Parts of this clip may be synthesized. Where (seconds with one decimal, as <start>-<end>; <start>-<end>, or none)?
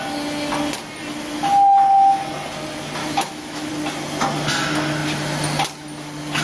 3.0-3.7